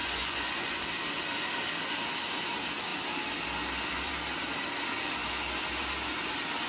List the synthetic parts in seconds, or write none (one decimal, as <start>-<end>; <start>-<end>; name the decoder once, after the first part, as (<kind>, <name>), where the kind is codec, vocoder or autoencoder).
0.0-0.8 (vocoder, Vocos)